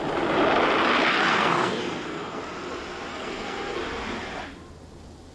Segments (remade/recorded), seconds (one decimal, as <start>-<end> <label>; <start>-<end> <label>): 0.0-1.3 recorded; 1.3-2.4 remade; 2.4-3.1 recorded; 3.1-3.8 remade; 3.8-5.3 recorded